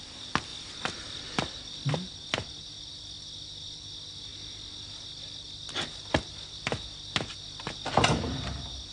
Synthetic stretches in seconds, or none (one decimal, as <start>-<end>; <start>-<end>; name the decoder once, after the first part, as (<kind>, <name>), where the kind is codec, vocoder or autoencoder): none